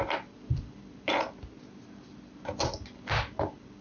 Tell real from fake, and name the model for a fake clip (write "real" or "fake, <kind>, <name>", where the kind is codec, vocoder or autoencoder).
real